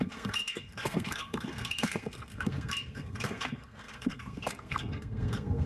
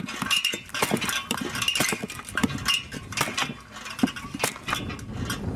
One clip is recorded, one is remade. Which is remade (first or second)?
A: first